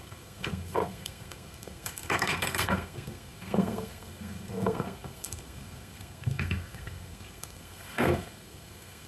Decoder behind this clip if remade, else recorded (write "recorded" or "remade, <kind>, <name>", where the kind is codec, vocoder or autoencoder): remade, codec, SNAC